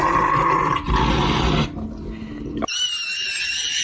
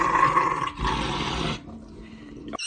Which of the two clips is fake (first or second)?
second